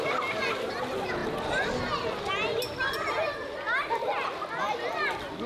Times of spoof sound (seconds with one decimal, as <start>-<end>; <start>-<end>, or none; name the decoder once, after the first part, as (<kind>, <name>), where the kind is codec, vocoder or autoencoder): none